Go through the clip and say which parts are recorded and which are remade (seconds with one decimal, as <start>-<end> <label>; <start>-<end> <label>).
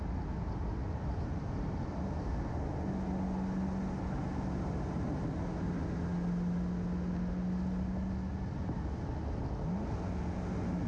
0.0-0.8 recorded; 0.8-3.1 remade; 3.1-10.9 recorded